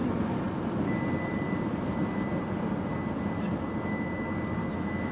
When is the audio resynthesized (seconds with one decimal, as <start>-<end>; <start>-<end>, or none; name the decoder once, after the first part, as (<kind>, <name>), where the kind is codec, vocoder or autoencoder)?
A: 4.6-5.1 (autoencoder, DAC-VAE)